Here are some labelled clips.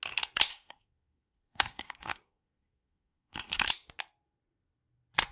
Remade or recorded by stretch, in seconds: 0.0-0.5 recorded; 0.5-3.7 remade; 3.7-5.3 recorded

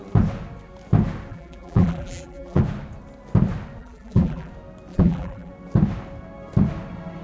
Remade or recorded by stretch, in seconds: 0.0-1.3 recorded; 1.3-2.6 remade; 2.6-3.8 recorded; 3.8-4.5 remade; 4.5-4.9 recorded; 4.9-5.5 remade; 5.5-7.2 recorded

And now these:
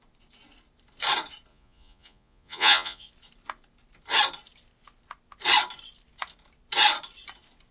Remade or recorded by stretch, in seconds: 0.0-1.5 recorded; 1.5-3.1 remade; 3.1-7.7 recorded

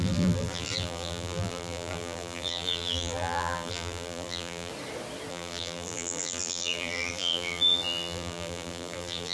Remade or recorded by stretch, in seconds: 0.0-4.7 remade; 4.7-5.3 recorded; 5.3-9.3 remade

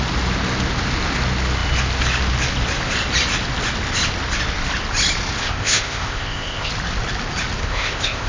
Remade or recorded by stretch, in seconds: 0.0-5.4 recorded; 5.4-6.7 remade; 6.7-7.6 recorded; 7.6-8.3 remade